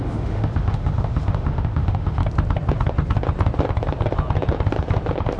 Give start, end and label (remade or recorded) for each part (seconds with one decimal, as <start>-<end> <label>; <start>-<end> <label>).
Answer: 0.0-2.2 remade; 2.2-5.4 recorded